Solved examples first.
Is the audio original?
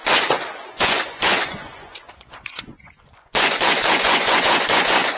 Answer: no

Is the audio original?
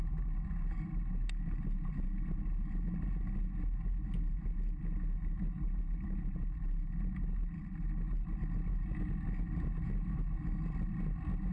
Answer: yes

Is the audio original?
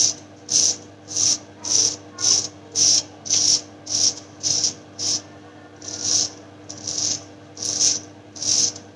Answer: yes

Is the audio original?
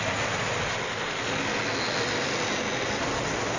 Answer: yes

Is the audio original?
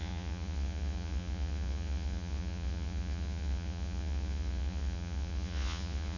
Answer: no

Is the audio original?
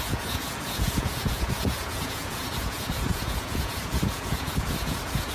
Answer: no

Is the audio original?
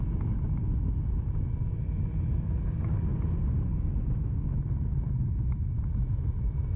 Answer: yes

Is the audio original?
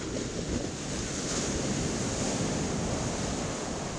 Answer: yes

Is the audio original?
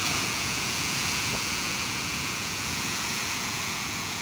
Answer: no